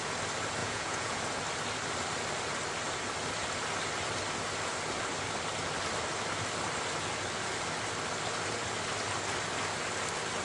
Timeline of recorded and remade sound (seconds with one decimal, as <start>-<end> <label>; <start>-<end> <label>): 0.0-0.6 recorded; 0.6-1.2 remade; 1.2-10.4 recorded